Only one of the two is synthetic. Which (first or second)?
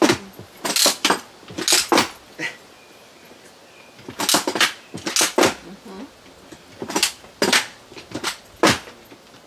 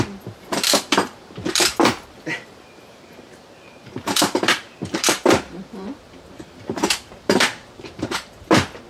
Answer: second